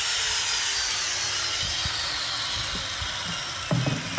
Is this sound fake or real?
real